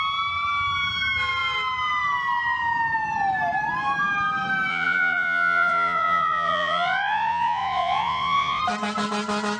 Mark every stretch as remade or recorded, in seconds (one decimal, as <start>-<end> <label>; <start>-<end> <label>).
0.0-4.7 recorded; 4.7-8.6 remade; 8.6-9.6 recorded